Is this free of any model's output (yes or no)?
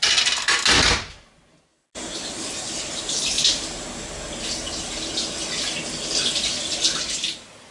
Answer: yes